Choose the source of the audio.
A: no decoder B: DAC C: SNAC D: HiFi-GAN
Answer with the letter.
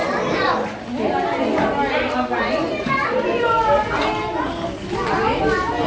A